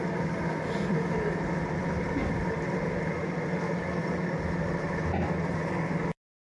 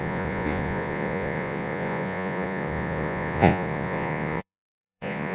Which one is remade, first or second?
second